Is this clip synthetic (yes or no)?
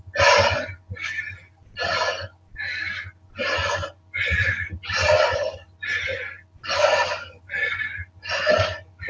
no